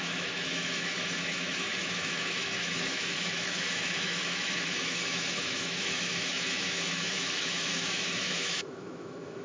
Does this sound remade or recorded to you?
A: remade